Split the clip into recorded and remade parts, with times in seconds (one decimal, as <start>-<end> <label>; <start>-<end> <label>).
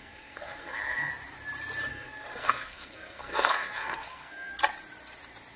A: 0.0-1.1 remade; 1.1-1.9 recorded; 1.9-4.5 remade; 4.5-5.6 recorded